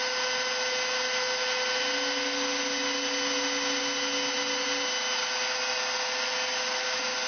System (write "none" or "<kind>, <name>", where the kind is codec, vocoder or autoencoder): none